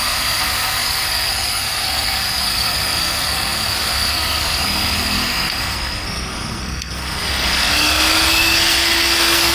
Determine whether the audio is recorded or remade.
remade